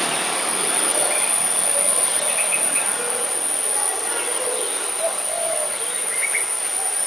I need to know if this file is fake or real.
real